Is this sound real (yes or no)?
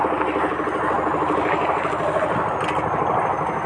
yes